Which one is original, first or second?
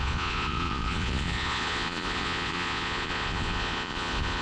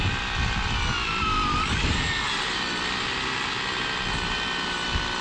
second